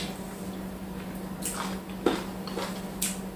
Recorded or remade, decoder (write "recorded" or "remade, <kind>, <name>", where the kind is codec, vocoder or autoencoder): recorded